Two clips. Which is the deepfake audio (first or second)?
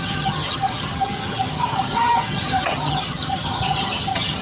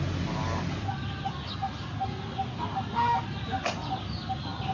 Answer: first